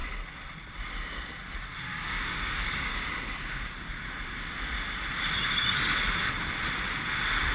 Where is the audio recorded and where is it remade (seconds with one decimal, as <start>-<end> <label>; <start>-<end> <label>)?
0.0-1.9 recorded; 1.9-3.1 remade; 3.1-7.5 recorded